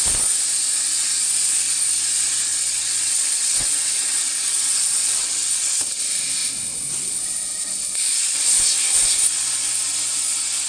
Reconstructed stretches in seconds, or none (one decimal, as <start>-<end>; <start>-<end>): 2.5-6.0